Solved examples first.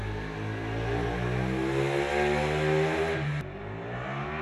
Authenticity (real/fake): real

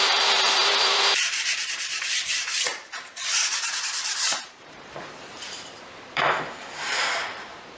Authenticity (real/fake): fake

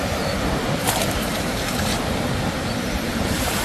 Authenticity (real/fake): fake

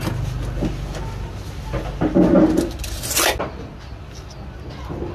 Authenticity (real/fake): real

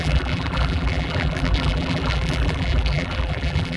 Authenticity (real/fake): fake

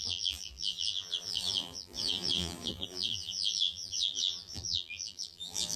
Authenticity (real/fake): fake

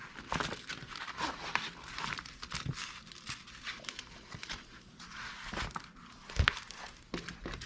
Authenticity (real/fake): real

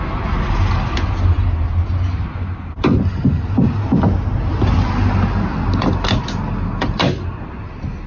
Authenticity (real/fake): real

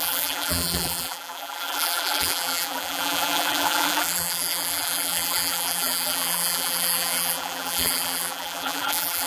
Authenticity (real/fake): fake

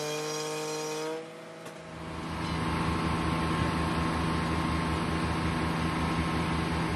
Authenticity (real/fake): real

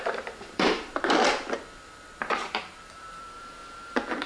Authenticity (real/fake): fake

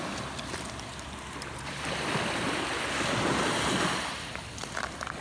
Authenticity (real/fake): fake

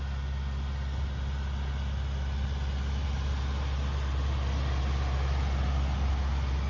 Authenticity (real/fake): real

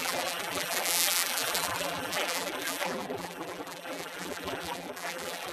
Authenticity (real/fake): fake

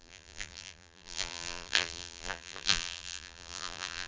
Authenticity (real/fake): fake